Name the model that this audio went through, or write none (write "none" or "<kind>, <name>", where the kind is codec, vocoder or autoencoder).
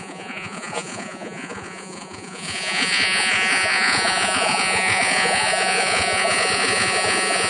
vocoder, Vocos